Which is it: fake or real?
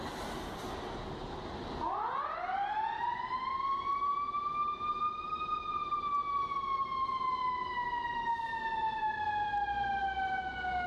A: real